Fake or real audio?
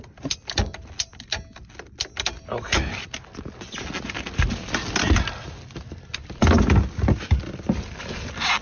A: real